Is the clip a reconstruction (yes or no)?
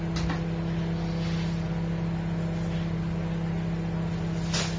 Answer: no